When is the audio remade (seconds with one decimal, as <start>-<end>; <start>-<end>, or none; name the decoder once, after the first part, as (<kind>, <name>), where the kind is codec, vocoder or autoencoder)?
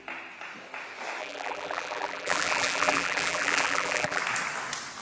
1.2-4.2 (vocoder, BigVGAN v2)